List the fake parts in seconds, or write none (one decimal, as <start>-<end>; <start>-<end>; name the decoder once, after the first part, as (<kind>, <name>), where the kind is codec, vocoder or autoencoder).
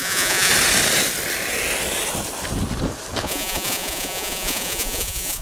0.0-0.5 (vocoder, Vocos); 3.2-5.4